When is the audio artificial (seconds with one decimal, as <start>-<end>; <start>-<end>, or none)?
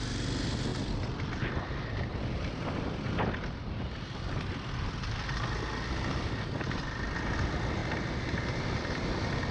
none